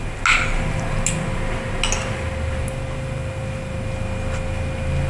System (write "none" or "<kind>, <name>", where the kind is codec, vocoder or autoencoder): none